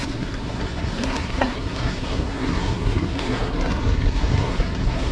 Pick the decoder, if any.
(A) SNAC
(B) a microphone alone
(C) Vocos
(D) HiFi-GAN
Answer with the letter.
A